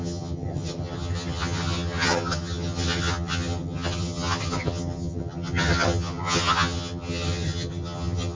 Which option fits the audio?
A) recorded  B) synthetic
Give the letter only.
B